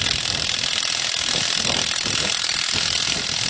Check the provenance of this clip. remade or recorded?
recorded